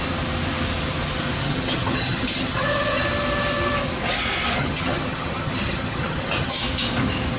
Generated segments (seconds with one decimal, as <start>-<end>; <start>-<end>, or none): 1.4-3.0; 4.6-6.6